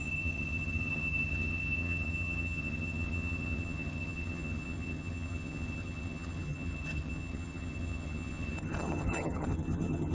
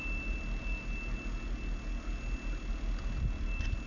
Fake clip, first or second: first